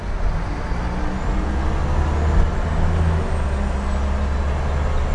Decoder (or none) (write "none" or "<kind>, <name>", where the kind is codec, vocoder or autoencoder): none